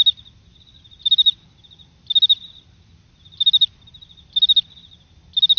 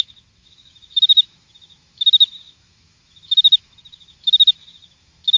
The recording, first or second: first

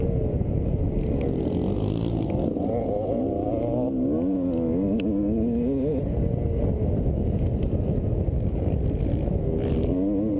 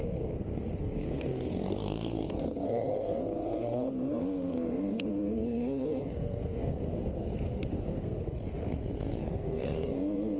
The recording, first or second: first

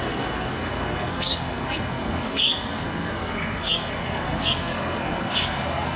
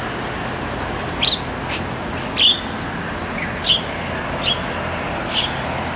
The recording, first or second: second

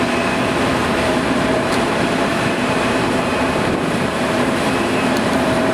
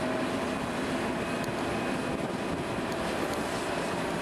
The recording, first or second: second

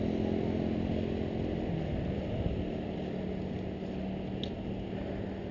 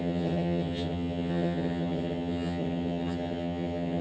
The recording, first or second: first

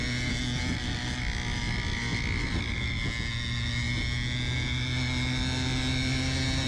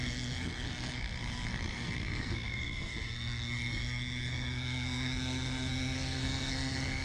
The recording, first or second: first